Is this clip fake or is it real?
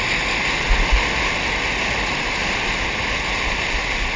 real